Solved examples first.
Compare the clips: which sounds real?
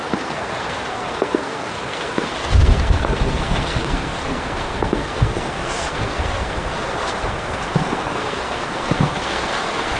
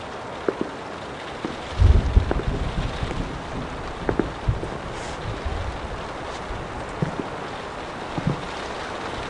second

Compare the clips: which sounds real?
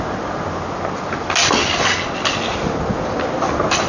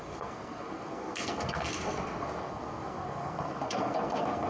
first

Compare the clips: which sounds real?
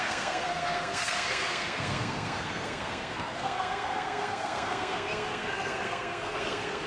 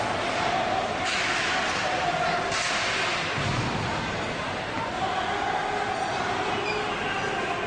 second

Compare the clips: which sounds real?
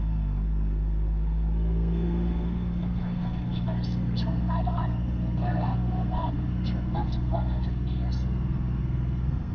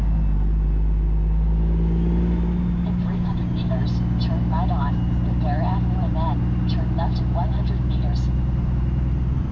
second